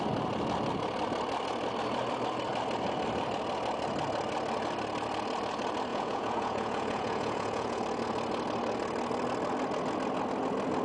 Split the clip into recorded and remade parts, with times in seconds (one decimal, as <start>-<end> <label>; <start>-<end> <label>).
0.0-5.9 recorded; 5.9-7.8 remade; 7.8-10.8 recorded